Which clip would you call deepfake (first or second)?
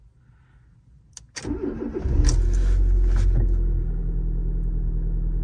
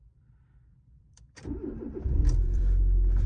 second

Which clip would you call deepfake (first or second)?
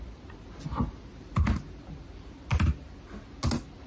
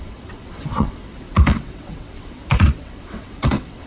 second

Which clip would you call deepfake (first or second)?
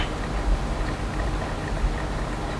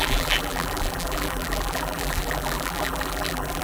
second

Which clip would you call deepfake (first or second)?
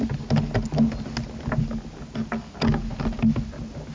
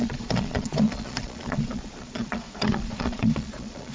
second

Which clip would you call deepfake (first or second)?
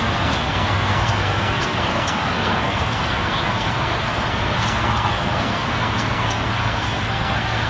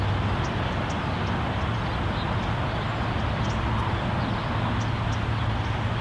first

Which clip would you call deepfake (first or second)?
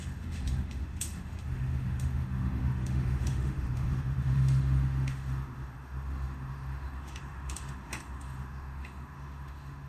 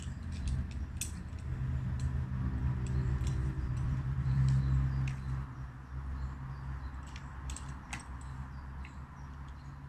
first